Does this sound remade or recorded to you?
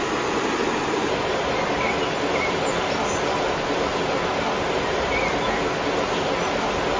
recorded